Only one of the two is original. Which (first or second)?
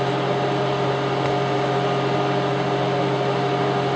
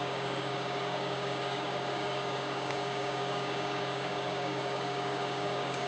first